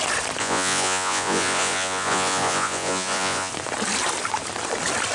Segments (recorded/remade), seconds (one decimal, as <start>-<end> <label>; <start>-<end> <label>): 0.0-0.4 recorded; 0.4-3.5 remade; 3.5-5.1 recorded